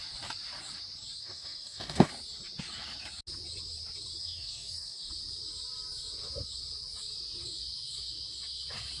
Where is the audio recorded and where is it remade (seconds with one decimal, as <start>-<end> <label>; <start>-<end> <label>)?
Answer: 0.0-1.2 recorded; 1.2-2.1 remade; 2.1-4.2 recorded; 4.2-5.1 remade; 5.1-9.0 recorded